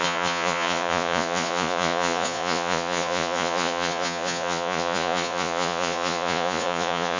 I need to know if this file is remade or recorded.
remade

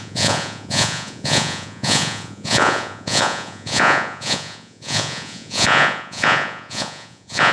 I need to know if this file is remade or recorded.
remade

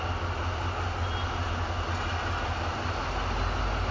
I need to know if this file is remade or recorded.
recorded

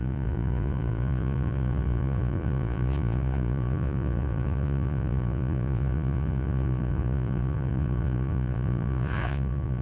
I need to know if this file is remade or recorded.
remade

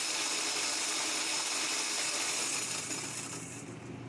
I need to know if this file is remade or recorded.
recorded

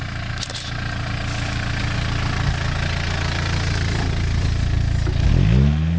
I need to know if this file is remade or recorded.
recorded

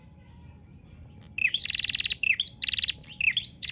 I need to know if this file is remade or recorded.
recorded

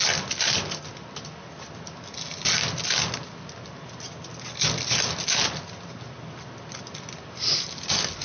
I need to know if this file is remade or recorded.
recorded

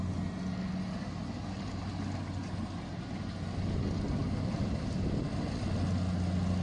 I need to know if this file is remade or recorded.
recorded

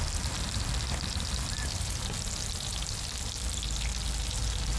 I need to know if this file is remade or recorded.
recorded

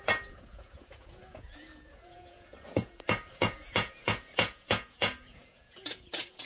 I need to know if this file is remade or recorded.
remade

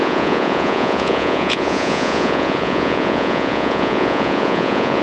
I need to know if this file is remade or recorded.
remade